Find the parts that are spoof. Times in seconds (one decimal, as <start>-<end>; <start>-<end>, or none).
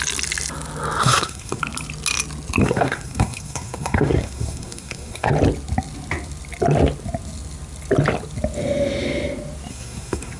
1.0-1.6; 2.6-5.3; 9.7-10.4